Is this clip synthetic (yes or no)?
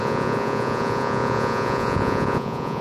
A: yes